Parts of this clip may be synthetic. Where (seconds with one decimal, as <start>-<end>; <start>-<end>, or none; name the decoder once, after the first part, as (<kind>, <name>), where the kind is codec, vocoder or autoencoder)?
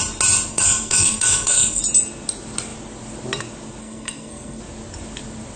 0.5-1.8 (codec, SNAC); 3.8-4.6